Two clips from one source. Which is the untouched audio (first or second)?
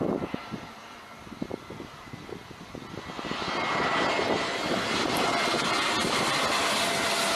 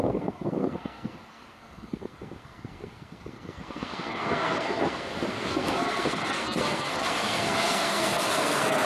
first